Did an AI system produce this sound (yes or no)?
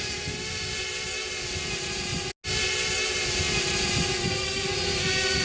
no